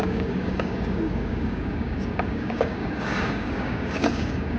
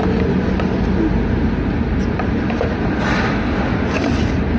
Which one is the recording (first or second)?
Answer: second